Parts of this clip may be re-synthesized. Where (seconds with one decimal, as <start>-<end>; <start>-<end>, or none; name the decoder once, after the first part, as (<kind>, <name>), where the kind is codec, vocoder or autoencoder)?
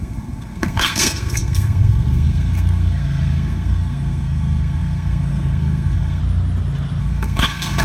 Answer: 0.0-6.2 (codec, SNAC); 7.0-7.8